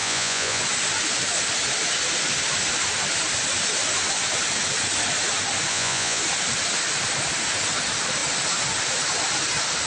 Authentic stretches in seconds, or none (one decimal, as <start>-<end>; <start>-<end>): 0.6-5.7; 6.2-9.9